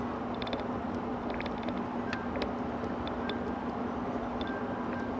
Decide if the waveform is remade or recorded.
recorded